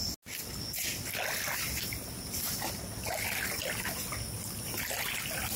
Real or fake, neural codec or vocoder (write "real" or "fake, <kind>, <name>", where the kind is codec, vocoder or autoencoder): real